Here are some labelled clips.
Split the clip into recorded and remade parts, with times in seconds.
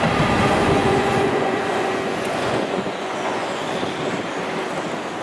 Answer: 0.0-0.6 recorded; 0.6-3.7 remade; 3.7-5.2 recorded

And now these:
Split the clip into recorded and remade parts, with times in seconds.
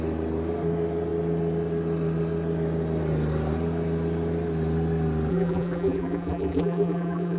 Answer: 0.0-5.3 recorded; 5.3-7.4 remade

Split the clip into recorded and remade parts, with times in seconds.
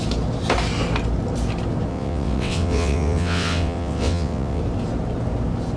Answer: 0.0-1.9 recorded; 1.9-4.6 remade; 4.6-5.8 recorded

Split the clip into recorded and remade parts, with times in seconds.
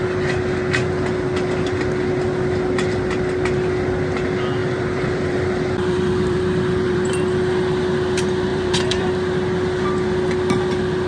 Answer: 0.0-4.6 recorded; 4.6-7.1 remade; 7.1-8.5 recorded; 8.5-9.1 remade; 9.1-11.1 recorded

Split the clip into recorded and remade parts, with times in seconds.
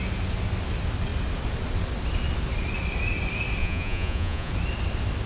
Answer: 0.0-3.6 recorded; 3.6-4.5 remade; 4.5-5.3 recorded